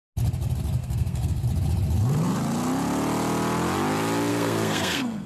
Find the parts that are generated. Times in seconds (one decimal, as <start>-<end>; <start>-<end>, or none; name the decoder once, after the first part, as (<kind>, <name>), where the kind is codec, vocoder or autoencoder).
0.8-1.4 (codec, SNAC); 4.3-5.3